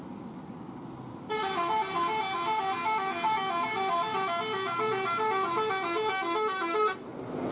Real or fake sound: real